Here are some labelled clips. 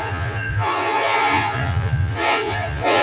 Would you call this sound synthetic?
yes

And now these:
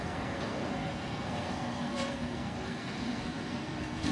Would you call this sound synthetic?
yes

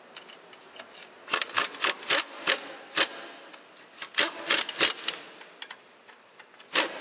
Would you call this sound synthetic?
no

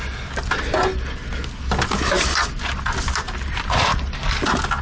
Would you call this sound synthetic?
no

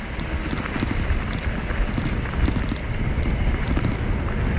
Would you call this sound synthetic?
no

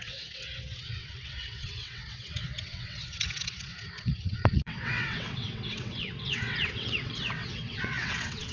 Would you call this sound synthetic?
yes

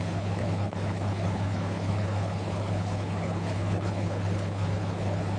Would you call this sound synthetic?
yes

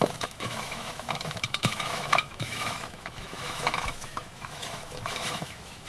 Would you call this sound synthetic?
yes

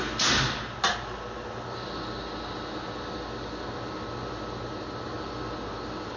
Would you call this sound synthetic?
no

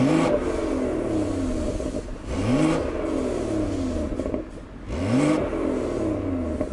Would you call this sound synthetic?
no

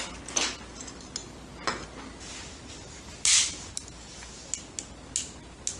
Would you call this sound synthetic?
no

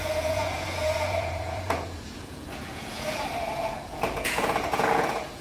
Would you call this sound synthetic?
yes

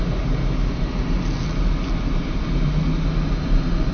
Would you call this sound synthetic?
no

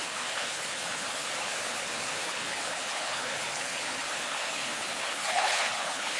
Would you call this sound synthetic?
yes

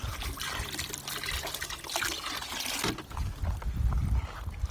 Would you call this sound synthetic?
no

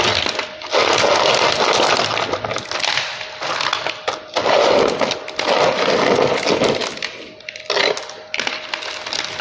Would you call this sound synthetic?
no